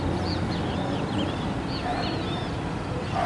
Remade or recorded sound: recorded